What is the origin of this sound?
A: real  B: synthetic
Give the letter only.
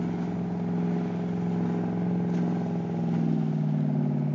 A